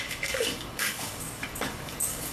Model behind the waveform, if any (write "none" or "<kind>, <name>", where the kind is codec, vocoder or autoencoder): codec, DAC